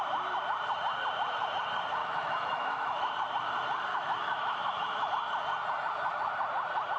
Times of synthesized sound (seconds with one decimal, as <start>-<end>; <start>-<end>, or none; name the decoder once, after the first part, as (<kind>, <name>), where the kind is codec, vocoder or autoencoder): 2.0-3.1 (autoencoder, DAC-VAE); 3.9-5.1